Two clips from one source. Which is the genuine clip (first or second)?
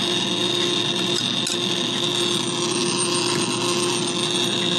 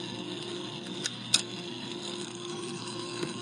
first